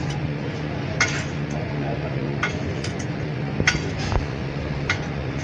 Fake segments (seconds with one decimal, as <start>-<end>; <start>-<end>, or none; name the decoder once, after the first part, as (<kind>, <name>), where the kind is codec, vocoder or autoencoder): 0.0-5.4 (vocoder, Vocos)